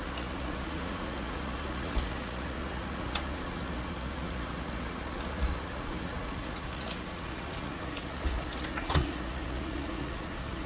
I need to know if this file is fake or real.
fake